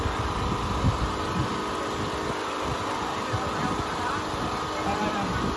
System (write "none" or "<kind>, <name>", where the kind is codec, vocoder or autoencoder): none